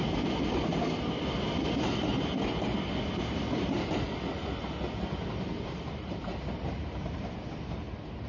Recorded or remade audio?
recorded